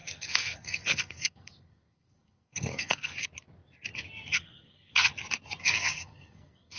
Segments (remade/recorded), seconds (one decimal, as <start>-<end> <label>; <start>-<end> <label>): 0.0-3.1 remade; 3.1-4.3 recorded; 4.3-5.1 remade; 5.1-5.6 recorded; 5.6-6.8 remade